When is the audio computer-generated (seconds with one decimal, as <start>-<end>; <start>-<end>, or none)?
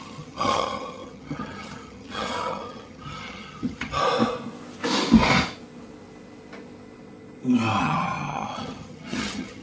0.0-4.0; 7.8-9.6